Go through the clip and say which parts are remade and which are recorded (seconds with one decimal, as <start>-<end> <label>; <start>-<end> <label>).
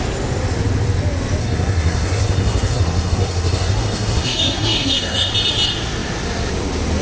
0.0-1.4 recorded; 1.4-5.3 remade; 5.3-7.0 recorded